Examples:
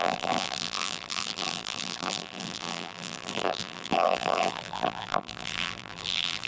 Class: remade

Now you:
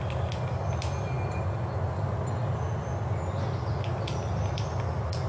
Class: recorded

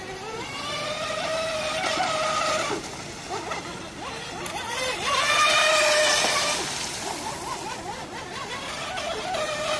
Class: recorded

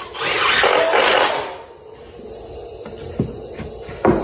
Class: recorded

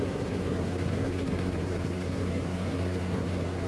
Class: remade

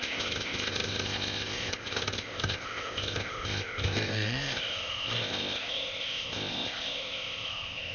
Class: remade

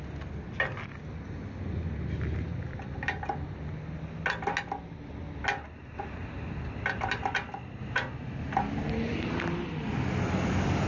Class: recorded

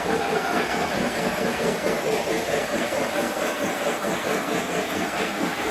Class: remade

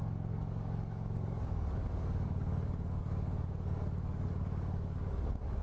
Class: remade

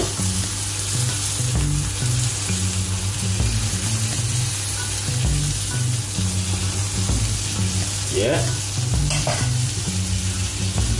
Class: recorded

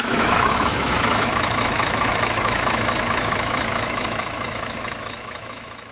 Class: remade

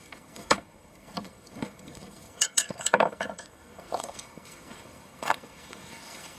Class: remade